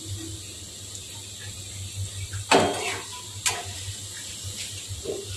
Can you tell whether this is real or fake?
real